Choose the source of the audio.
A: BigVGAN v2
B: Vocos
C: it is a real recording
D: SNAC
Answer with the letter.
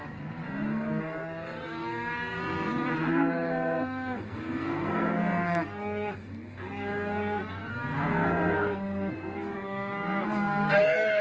D